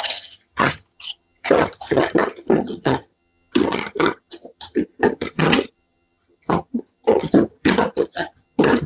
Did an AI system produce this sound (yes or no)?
yes